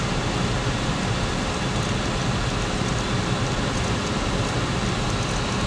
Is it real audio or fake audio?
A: real